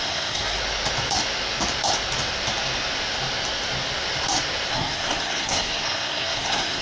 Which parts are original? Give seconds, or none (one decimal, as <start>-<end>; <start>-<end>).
0.6-4.7